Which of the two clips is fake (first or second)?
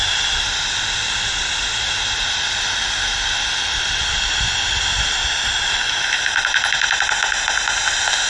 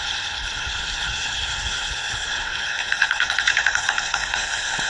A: second